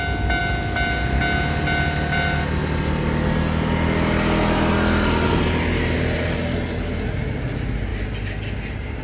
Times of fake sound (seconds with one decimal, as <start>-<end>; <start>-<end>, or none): none